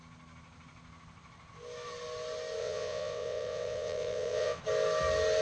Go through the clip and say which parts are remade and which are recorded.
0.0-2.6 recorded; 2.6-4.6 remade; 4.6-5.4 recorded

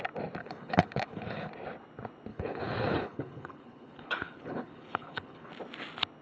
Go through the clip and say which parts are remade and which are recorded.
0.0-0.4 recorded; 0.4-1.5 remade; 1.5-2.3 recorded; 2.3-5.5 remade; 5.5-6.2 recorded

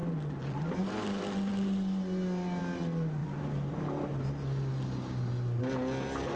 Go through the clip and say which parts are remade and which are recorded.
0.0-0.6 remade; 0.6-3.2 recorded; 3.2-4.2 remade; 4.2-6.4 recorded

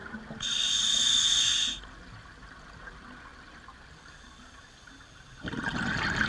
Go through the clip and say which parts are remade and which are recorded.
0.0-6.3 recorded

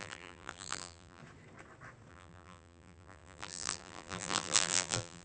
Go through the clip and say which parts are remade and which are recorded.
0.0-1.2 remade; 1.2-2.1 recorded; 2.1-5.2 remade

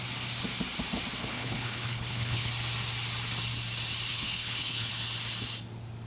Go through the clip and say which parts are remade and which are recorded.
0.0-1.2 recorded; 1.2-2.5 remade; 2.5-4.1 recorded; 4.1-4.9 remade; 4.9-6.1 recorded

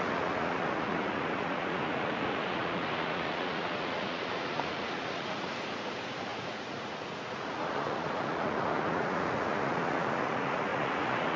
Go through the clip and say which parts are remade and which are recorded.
0.0-11.4 remade

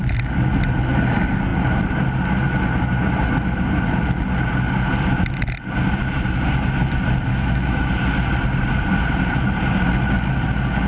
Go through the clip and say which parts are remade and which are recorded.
0.0-7.3 recorded; 7.3-7.9 remade; 7.9-10.9 recorded